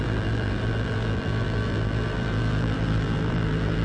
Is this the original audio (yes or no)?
no